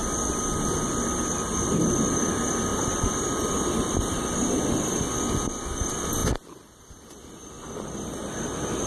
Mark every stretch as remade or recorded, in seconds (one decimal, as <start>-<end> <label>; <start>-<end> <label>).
0.0-2.7 recorded; 2.7-3.4 remade; 3.4-6.2 recorded; 6.2-7.5 remade; 7.5-8.9 recorded